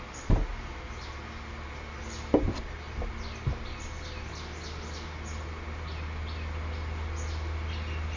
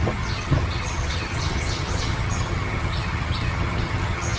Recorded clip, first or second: first